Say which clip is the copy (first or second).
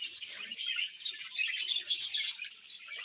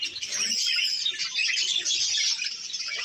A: first